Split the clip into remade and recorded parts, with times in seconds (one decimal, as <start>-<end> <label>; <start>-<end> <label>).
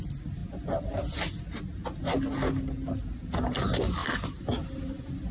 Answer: 0.0-5.3 recorded